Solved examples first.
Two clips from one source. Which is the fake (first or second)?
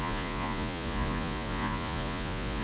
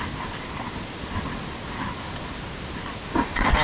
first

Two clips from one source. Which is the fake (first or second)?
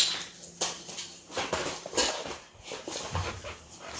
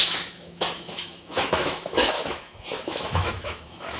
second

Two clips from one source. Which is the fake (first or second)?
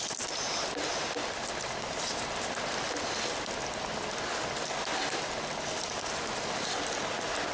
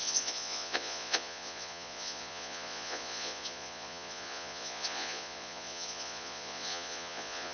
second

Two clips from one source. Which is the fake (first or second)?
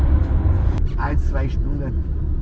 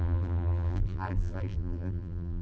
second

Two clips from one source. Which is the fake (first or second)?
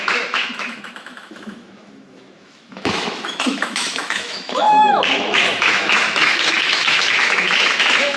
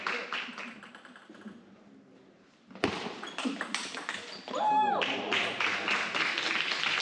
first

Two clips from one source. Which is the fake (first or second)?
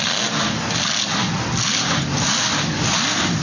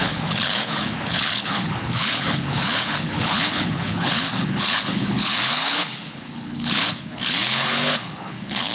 second